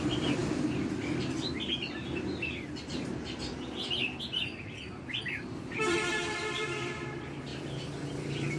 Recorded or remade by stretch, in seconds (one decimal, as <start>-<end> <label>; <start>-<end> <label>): 0.0-0.4 remade; 0.4-4.2 recorded; 4.2-8.6 remade